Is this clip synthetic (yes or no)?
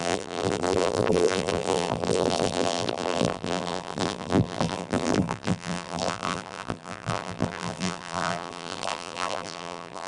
yes